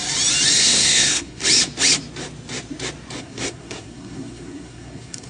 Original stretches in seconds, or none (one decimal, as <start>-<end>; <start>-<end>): 0.0-0.6; 1.4-3.2